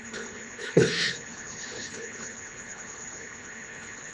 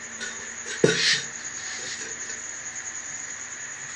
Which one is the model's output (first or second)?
first